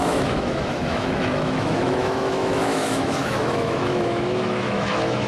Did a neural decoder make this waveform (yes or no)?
yes